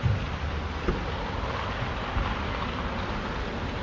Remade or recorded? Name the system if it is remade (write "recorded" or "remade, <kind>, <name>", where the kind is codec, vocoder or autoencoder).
recorded